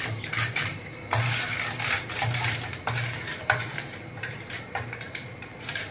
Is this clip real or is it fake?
fake